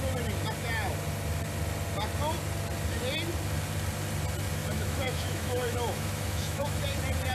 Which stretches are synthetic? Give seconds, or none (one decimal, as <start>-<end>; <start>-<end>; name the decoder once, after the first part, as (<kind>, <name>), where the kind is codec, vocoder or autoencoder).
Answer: 4.6-6.8 (autoencoder, DAC-VAE)